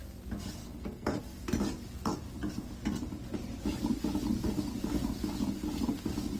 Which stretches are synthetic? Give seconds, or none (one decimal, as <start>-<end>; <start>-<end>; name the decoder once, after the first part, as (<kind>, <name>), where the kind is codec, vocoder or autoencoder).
0.6-1.2 (codec, SNAC)